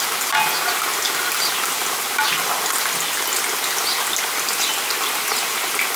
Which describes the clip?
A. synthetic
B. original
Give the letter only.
B